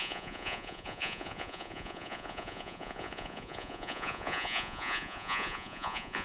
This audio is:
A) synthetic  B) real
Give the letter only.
A